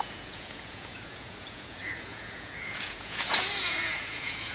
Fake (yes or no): yes